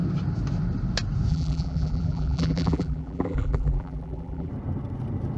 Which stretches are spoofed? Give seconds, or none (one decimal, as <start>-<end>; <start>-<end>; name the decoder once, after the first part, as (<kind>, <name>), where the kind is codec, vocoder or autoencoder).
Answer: 1.3-4.5 (vocoder, BigVGAN v2)